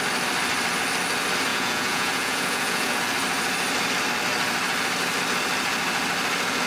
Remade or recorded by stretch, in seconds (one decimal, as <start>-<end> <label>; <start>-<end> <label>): 0.0-1.5 recorded; 1.5-3.0 remade; 3.0-6.7 recorded